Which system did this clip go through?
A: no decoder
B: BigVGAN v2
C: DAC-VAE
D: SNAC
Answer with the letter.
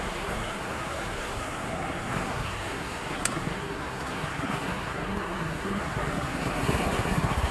D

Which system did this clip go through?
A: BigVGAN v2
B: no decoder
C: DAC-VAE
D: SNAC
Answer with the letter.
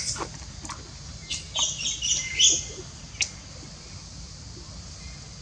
B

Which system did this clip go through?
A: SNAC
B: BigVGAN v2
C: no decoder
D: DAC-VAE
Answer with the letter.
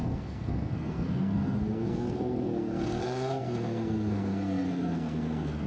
A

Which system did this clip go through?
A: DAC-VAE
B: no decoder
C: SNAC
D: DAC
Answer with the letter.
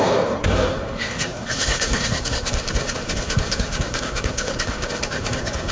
C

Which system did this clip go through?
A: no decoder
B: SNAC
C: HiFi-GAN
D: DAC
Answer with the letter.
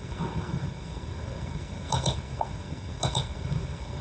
B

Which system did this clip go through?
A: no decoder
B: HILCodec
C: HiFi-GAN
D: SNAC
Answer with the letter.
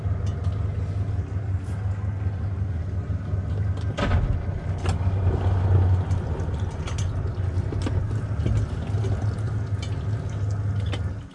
A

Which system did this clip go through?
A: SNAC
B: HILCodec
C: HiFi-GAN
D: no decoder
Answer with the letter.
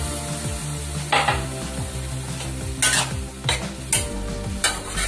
D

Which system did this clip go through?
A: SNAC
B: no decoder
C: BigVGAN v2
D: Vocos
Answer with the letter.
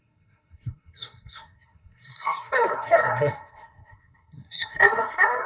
A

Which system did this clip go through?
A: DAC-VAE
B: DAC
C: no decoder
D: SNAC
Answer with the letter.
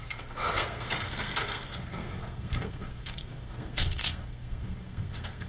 D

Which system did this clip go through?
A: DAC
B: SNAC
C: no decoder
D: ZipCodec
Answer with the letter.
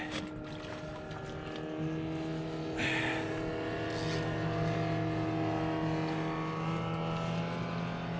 C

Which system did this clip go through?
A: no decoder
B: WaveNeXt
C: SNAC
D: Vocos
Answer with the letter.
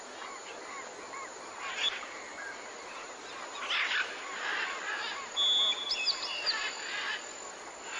A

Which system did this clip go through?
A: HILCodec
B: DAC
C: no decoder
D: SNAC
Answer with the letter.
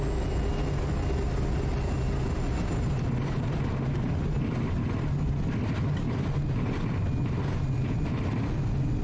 C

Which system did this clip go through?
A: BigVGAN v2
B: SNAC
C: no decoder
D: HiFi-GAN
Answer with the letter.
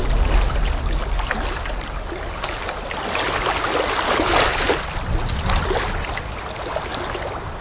C